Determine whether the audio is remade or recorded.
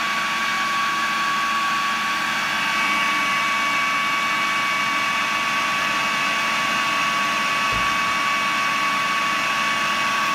recorded